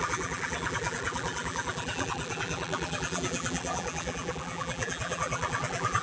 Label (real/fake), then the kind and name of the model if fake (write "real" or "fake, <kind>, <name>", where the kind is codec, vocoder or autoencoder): fake, vocoder, BigVGAN v2